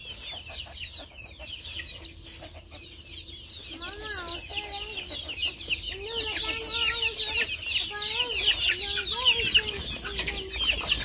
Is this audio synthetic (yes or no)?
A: no